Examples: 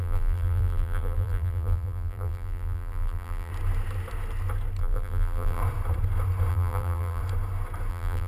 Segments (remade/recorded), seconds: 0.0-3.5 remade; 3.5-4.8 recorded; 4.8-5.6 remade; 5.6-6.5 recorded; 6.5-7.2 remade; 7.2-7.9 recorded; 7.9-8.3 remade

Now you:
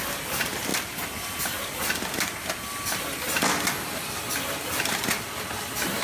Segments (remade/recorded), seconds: 0.0-6.0 recorded

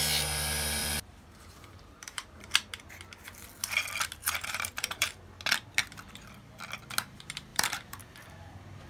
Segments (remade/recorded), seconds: 0.0-0.8 recorded; 0.8-2.5 remade; 2.5-4.2 recorded; 4.2-5.1 remade; 5.1-7.5 recorded; 7.5-8.0 remade; 8.0-8.9 recorded

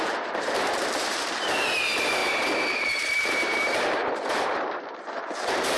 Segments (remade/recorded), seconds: 0.0-2.2 remade; 2.2-2.8 recorded; 2.8-5.8 remade